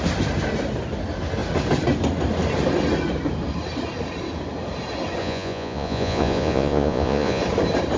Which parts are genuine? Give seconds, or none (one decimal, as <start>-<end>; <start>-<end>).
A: 0.0-5.2; 7.4-8.0